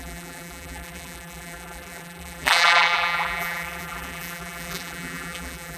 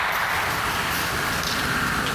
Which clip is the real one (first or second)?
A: second